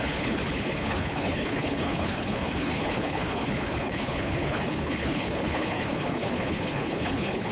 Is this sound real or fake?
fake